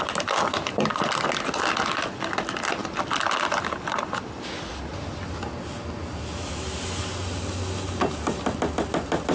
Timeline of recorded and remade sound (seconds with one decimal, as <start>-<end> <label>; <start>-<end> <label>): 0.0-9.3 recorded